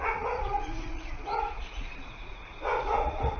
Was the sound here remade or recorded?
remade